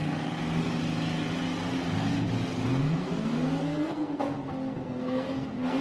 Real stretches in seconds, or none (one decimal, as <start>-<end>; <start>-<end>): 0.0-2.7